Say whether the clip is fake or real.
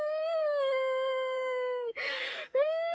fake